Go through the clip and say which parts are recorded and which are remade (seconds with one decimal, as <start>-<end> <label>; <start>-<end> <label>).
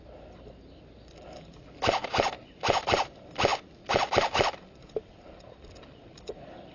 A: 0.0-2.0 recorded; 2.0-2.6 remade; 2.6-3.5 recorded; 3.5-6.3 remade; 6.3-6.7 recorded